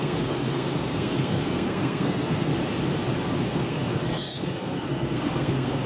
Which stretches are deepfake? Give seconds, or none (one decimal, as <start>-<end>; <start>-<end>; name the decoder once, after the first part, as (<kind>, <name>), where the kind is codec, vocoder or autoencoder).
0.0-2.5 (codec, SNAC); 3.4-5.9